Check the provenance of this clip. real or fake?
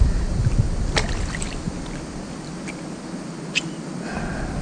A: real